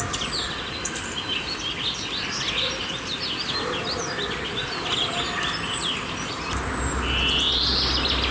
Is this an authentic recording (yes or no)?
yes